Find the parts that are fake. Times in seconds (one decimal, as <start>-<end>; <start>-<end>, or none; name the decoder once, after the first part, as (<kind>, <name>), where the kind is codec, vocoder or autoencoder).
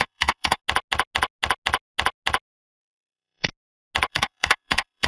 0.0-0.6 (codec, SNAC); 2.8-3.5; 4.1-5.1